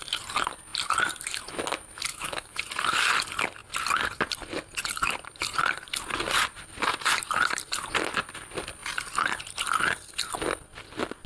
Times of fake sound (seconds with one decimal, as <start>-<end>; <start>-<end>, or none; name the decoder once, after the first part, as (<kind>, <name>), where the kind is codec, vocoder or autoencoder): 2.1-2.6 (autoencoder, DAC-VAE)